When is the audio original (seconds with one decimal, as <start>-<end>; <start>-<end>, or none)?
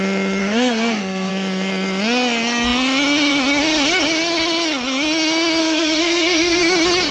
0.0-0.4; 1.3-5.6; 6.6-7.1